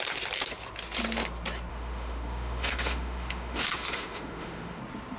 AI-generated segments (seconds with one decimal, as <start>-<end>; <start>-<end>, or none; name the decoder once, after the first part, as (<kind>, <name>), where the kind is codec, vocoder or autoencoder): 1.7-4.8 (autoencoder, DAC-VAE)

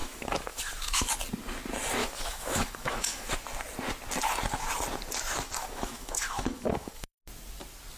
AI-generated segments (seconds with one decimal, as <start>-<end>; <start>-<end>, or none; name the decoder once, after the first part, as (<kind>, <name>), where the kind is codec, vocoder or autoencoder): 0.0-1.1 (autoencoder, DAC-VAE); 2.0-3.3; 5.6-7.2

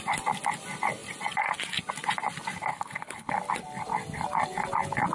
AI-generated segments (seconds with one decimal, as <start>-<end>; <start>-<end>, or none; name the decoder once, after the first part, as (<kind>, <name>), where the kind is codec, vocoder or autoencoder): 2.7-3.3 (codec, HILCodec)

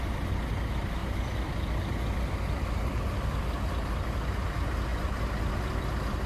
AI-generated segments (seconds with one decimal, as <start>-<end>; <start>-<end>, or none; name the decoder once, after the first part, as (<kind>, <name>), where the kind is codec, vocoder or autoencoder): none

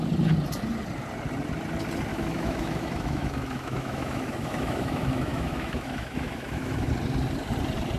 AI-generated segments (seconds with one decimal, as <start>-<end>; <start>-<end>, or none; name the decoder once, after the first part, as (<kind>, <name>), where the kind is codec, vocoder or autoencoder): 2.1-6.9 (autoencoder, DAC-VAE)

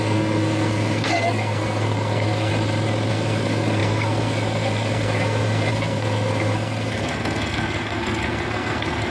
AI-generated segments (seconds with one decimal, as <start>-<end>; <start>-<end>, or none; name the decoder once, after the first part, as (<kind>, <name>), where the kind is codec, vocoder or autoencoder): 0.0-2.5 (codec, SNAC); 3.1-9.1